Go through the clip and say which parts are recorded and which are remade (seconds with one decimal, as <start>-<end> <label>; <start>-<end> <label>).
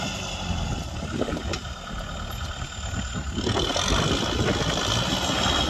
0.0-5.7 recorded